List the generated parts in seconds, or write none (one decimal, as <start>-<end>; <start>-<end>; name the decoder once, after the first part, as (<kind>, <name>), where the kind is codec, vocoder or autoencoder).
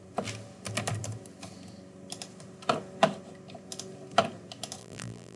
4.8-5.4 (vocoder, BigVGAN v2)